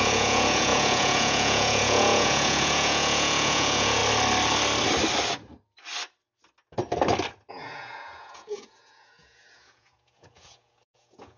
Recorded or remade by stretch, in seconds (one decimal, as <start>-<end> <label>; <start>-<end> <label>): 0.0-4.0 remade; 4.0-7.5 recorded; 7.5-11.4 remade